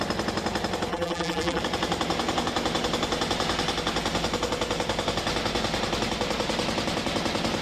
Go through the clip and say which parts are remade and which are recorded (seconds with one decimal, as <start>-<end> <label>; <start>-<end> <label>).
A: 0.0-0.9 recorded; 0.9-1.6 remade; 1.6-7.6 recorded